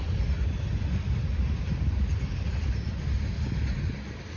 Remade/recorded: recorded